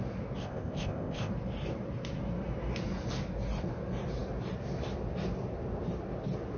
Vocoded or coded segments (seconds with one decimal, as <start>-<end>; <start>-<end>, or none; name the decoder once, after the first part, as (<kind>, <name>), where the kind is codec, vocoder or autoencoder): 0.4-1.3 (codec, ZipCodec)